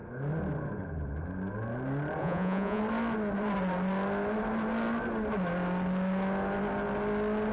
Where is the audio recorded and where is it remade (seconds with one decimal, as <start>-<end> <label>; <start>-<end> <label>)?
0.0-2.2 recorded; 2.2-2.8 remade; 2.8-7.5 recorded